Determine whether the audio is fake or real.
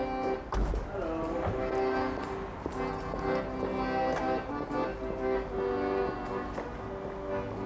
real